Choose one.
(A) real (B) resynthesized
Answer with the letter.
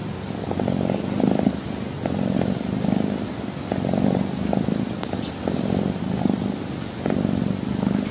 A